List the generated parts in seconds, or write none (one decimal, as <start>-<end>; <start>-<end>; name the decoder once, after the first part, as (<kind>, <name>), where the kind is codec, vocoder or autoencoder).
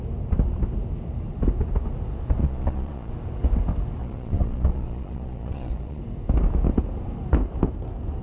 2.4-3.1 (vocoder, Vocos); 4.0-6.0